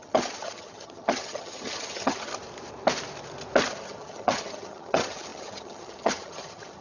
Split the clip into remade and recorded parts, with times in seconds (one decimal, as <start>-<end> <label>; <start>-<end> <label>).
0.0-2.3 remade; 2.3-3.7 recorded; 3.7-6.8 remade